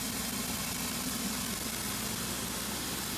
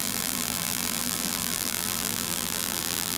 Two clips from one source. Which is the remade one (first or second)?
second